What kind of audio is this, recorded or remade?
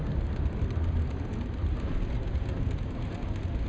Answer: recorded